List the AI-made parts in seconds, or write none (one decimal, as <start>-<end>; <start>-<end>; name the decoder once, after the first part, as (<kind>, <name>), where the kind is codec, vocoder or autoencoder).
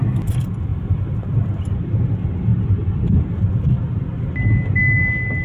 0.7-1.7 (vocoder, BigVGAN v2); 2.5-4.2